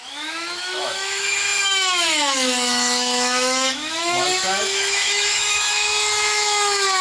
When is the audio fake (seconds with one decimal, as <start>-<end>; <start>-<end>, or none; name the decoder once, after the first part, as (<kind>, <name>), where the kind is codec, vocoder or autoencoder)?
0.0-7.0 (autoencoder, DAC-VAE)